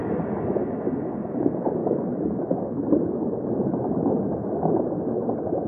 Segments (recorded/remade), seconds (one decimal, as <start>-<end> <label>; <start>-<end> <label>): 0.0-1.8 recorded; 1.8-3.4 remade; 3.4-5.7 recorded